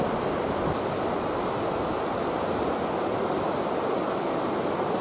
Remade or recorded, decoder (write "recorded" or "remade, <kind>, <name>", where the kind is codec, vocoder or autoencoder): recorded